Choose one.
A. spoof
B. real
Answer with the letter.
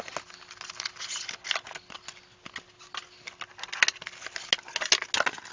B